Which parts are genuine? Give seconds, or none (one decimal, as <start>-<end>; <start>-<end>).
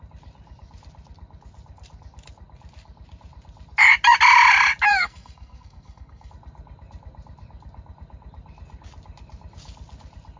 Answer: 0.0-4.9; 6.3-10.4